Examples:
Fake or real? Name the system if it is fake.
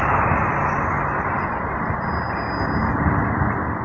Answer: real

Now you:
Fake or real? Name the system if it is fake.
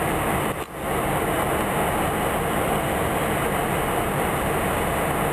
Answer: real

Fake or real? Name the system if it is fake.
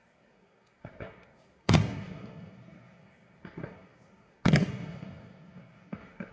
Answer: fake, codec, SNAC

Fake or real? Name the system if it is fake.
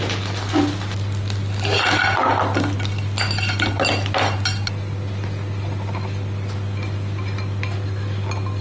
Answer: real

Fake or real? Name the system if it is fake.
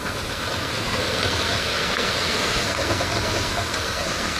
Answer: fake, codec, SNAC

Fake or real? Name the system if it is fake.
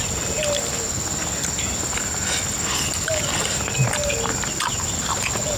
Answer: real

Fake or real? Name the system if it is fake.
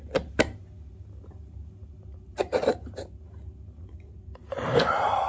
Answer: real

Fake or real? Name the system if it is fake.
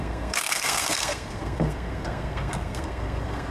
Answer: fake, codec, SNAC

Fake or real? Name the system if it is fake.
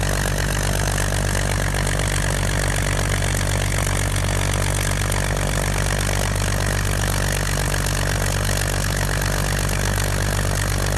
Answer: real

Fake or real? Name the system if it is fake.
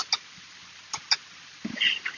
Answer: real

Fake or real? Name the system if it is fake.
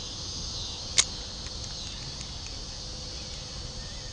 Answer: real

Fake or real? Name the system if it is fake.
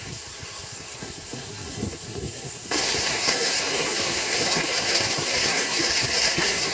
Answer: fake, codec, SNAC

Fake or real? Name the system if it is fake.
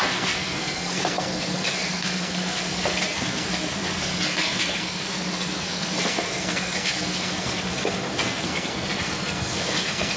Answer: fake, codec, SNAC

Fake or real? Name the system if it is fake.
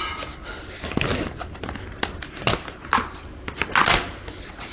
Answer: real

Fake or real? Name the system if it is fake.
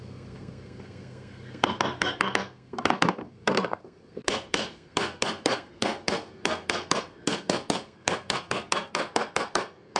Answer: fake, codec, SNAC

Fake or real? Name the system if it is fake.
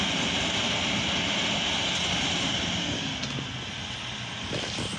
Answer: real